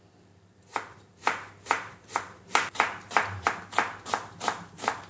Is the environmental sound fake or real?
fake